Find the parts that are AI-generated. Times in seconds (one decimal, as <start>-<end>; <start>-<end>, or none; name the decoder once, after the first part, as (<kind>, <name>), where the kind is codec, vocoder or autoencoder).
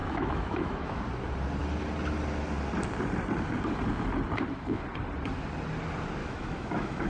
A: 0.0-1.0 (autoencoder, DAC-VAE); 6.2-7.1